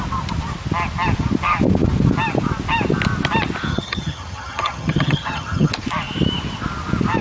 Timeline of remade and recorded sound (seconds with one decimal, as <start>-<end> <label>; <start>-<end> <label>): 0.0-3.7 recorded; 3.7-5.7 remade; 5.7-7.2 recorded